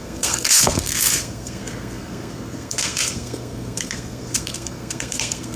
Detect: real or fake fake